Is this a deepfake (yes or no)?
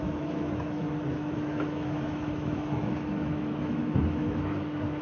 yes